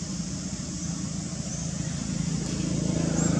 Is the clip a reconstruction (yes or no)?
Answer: no